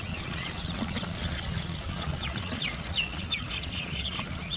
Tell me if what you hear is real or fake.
fake